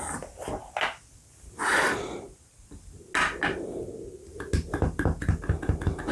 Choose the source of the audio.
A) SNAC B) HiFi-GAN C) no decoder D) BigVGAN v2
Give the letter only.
C